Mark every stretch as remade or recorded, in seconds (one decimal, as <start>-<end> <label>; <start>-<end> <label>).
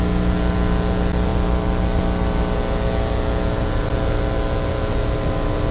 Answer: 0.0-1.3 recorded; 1.3-2.0 remade; 2.0-5.7 recorded